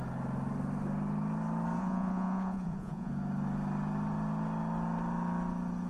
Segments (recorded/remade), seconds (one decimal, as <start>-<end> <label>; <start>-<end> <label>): 0.0-1.8 recorded; 1.8-3.1 remade; 3.1-5.9 recorded